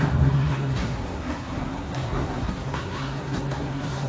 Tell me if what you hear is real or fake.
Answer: fake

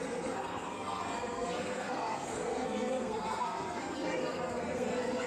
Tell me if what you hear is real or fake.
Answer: fake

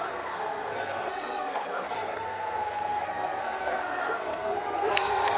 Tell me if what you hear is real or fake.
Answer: fake